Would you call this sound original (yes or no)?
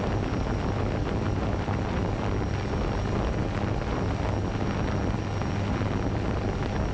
yes